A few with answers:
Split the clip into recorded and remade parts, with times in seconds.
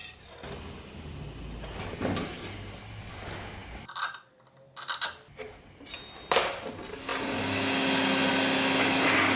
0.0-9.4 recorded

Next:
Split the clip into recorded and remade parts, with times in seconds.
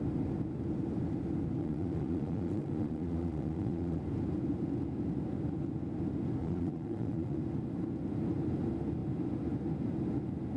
0.0-1.6 recorded; 1.6-4.0 remade; 4.0-6.4 recorded; 6.4-7.4 remade; 7.4-10.6 recorded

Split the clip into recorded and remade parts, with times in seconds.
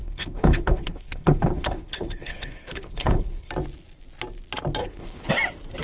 0.0-3.5 remade; 3.5-4.8 recorded; 4.8-5.3 remade; 5.3-5.8 recorded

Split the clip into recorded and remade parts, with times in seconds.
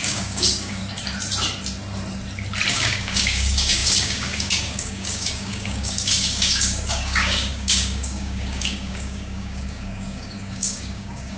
0.0-0.8 remade; 0.8-2.7 recorded; 2.7-11.4 remade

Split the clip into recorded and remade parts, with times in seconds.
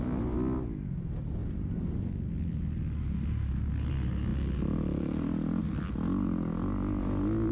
0.0-1.4 recorded; 1.4-2.1 remade; 2.1-7.5 recorded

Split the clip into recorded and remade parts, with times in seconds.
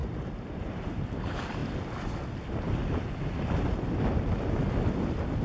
0.0-1.0 remade; 1.0-5.4 recorded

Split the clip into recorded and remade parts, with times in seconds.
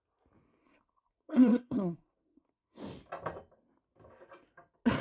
0.0-0.6 recorded; 0.6-2.8 remade; 2.8-5.0 recorded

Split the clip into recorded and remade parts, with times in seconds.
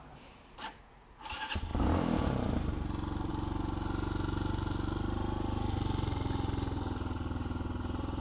0.0-8.2 recorded